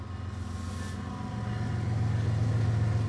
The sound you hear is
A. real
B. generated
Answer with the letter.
A